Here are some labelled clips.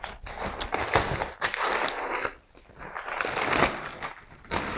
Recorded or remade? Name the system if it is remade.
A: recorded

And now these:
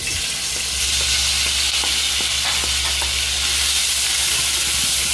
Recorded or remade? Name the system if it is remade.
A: recorded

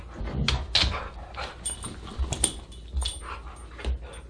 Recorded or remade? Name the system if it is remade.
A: recorded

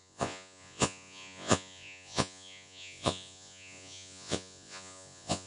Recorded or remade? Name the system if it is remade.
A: remade, vocoder, Vocos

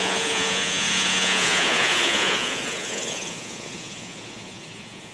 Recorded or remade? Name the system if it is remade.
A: remade, vocoder, Vocos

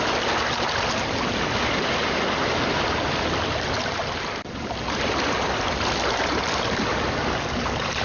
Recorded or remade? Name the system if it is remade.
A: recorded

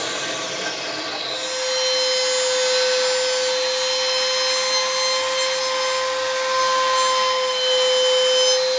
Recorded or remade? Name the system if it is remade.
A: recorded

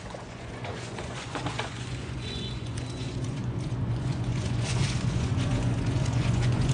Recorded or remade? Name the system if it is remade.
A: remade, vocoder, Vocos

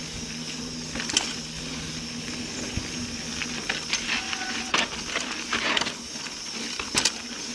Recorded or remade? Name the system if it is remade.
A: recorded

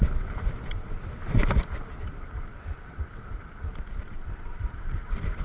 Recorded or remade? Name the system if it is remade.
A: recorded